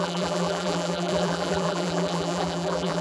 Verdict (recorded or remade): remade